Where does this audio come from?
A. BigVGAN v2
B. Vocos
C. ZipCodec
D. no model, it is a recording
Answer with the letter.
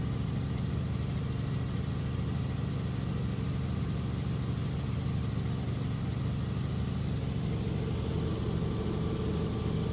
D